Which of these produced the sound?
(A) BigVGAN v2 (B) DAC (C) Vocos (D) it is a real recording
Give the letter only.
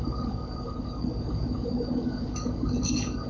B